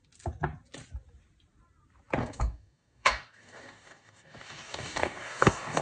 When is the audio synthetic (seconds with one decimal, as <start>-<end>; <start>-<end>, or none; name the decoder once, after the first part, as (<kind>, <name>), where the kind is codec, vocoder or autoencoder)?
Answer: 2.2-5.8 (codec, DAC)